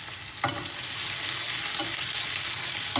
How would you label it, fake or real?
real